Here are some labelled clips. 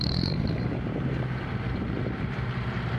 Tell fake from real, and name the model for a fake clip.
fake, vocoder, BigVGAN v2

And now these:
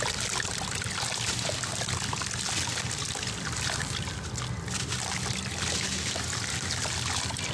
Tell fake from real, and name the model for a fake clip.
real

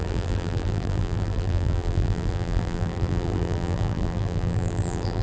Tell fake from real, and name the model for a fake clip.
fake, vocoder, BigVGAN v2